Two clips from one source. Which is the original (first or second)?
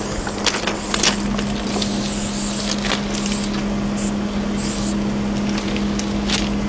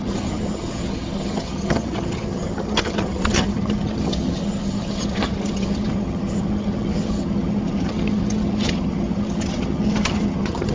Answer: first